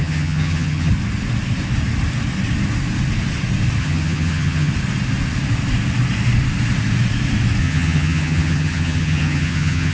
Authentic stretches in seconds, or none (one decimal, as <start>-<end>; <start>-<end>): 0.9-3.8; 4.7-7.6